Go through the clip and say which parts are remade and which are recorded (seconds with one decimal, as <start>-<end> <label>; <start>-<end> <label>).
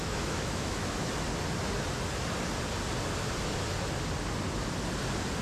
0.0-1.1 remade; 1.1-5.4 recorded